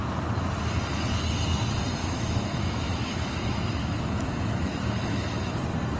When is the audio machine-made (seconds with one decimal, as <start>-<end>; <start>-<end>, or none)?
2.0-5.6